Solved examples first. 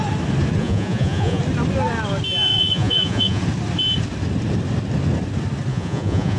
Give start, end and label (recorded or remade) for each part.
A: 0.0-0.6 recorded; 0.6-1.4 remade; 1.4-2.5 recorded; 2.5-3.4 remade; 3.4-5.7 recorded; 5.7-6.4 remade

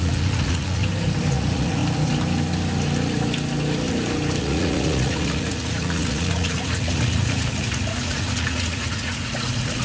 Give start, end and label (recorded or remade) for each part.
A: 0.0-0.8 remade; 0.8-1.3 recorded; 1.3-1.8 remade; 1.8-4.4 recorded; 4.4-9.8 remade

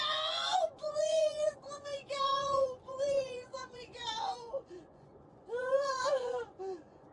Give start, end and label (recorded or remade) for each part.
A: 0.0-7.1 remade

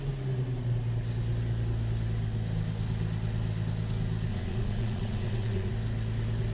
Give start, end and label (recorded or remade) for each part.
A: 0.0-4.3 recorded; 4.3-5.7 remade; 5.7-6.5 recorded

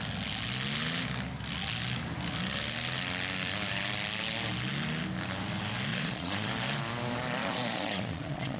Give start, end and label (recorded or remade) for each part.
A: 0.0-5.9 recorded; 5.9-6.5 remade; 6.5-7.4 recorded; 7.4-8.6 remade

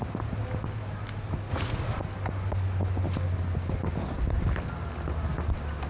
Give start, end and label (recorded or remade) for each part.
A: 0.0-1.5 recorded; 1.5-2.0 remade; 2.0-5.9 recorded

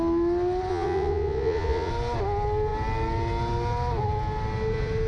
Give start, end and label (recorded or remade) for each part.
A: 0.0-0.7 recorded; 0.7-1.9 remade; 1.9-5.1 recorded